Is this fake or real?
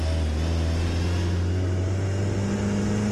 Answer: real